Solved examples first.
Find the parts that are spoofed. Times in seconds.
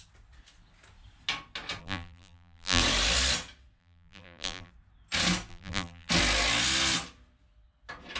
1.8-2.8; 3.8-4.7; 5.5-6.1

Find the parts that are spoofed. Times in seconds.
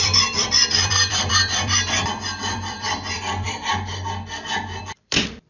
0.0-3.7; 4.8-5.5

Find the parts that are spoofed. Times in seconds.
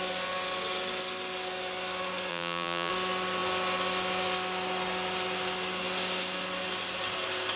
2.3-2.9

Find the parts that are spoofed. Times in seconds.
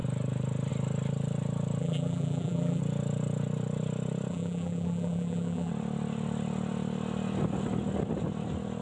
1.8-2.8; 4.3-5.7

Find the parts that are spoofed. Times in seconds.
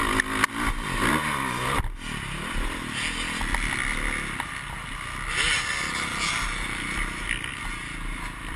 6.1-7.6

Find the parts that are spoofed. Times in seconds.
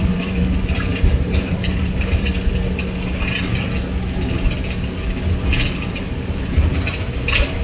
0.0-2.3; 5.9-7.6